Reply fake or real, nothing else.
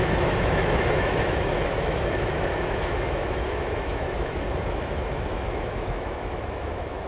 fake